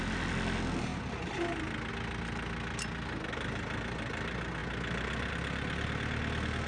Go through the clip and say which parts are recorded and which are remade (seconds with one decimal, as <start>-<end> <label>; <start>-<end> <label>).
0.0-6.7 recorded